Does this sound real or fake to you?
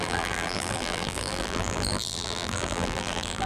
fake